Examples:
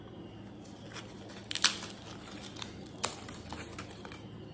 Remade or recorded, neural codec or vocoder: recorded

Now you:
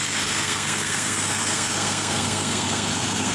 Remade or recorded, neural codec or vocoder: remade, codec, SNAC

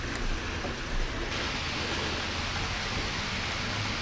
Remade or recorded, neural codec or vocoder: recorded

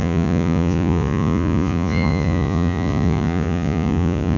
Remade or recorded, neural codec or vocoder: remade, vocoder, Vocos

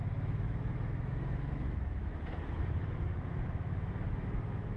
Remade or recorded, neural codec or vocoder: remade, autoencoder, DAC-VAE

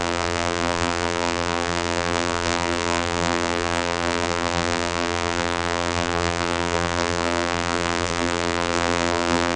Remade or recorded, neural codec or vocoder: remade, vocoder, BigVGAN v2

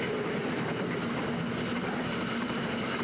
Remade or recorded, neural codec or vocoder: recorded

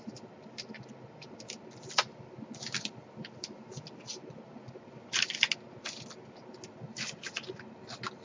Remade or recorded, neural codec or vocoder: recorded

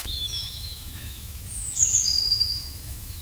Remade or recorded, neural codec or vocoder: remade, autoencoder, DAC-VAE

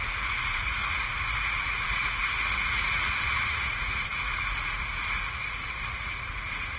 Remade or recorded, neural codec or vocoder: remade, vocoder, Vocos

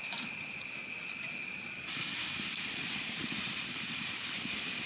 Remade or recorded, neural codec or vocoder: remade, vocoder, BigVGAN v2